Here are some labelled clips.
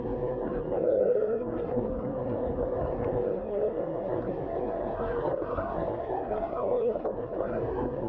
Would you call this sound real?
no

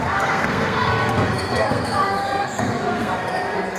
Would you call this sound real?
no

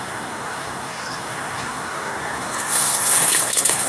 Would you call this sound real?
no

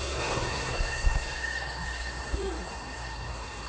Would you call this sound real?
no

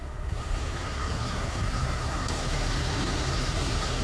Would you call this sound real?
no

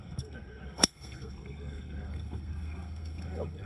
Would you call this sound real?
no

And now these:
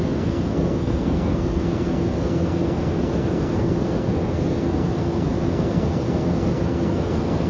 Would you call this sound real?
no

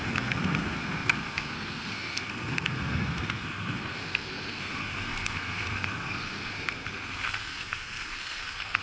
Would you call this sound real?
no